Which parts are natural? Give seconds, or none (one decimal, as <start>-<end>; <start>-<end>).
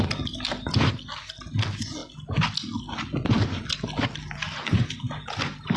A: 0.0-5.8